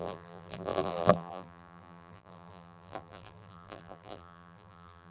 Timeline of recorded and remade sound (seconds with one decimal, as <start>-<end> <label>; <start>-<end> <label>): 0.0-5.1 remade